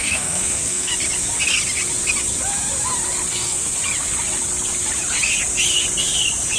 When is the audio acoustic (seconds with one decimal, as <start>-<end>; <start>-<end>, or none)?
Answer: 0.9-3.3; 3.8-6.6